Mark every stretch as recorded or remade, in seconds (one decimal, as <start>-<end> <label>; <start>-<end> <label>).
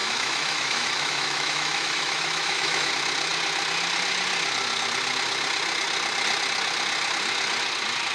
0.0-2.9 remade; 2.9-8.1 recorded